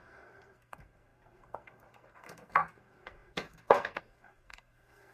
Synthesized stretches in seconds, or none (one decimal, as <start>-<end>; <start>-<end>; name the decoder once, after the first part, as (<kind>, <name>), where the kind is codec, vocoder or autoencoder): 0.0-5.1 (codec, SNAC)